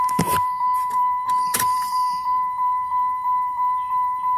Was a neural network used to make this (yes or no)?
yes